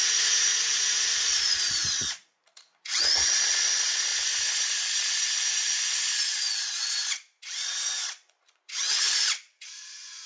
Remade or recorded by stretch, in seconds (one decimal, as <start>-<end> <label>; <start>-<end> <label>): 0.0-10.3 remade